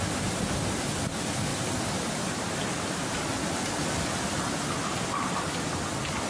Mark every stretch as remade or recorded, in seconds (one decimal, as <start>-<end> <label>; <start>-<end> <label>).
0.0-6.3 recorded